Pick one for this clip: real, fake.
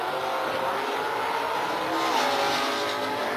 real